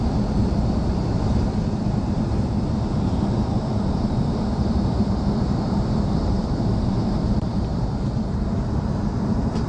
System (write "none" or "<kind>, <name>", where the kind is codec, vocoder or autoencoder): vocoder, BigVGAN v2